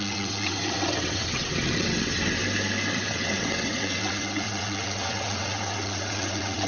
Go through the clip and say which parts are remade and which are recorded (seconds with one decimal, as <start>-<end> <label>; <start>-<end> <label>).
0.0-2.4 remade; 2.4-2.9 recorded; 2.9-6.7 remade